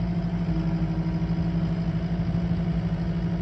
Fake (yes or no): no